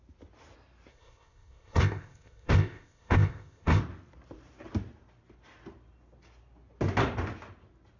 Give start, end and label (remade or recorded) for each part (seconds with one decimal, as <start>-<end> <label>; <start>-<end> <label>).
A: 0.0-0.9 recorded; 0.9-3.8 remade; 3.8-8.0 recorded